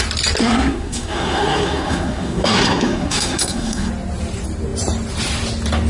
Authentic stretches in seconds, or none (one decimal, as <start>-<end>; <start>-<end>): 0.0-0.4; 3.9-5.9